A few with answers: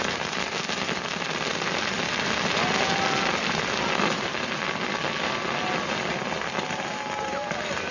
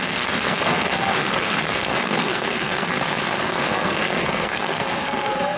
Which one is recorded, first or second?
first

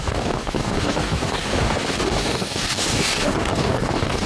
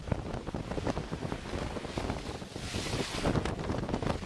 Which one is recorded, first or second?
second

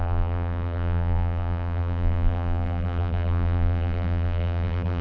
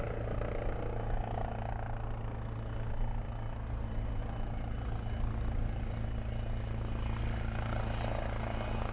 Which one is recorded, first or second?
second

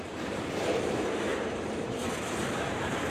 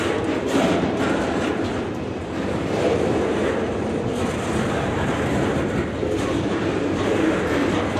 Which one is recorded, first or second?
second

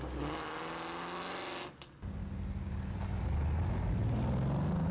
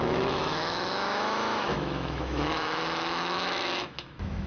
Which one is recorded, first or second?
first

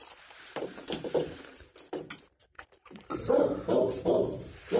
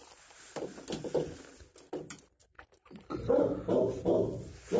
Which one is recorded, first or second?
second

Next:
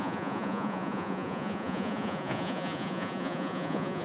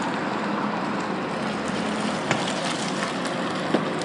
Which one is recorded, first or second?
second